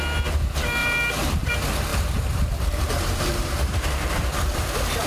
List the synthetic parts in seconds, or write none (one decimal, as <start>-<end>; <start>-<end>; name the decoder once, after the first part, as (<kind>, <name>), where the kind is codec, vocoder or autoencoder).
0.8-1.5 (vocoder, BigVGAN v2); 1.9-5.1